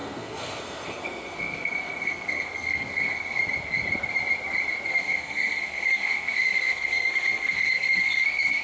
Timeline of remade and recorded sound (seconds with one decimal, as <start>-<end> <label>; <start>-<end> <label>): 0.0-3.4 remade; 3.4-4.9 recorded; 4.9-8.6 remade